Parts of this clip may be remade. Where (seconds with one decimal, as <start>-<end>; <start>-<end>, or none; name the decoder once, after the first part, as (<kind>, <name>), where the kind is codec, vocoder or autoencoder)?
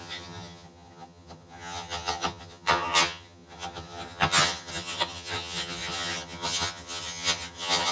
0.0-7.9 (vocoder, HiFi-GAN)